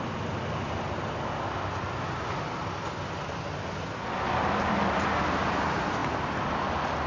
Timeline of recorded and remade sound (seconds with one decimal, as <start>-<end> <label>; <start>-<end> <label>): 0.0-7.1 recorded